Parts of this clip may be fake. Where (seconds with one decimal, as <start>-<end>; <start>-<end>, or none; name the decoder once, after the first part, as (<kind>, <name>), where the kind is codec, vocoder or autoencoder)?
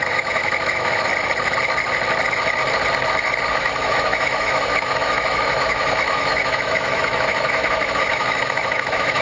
0.0-1.1 (autoencoder, DAC-VAE); 3.5-9.2